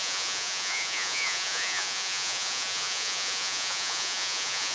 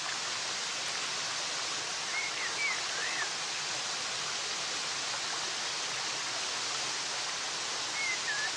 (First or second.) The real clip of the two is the second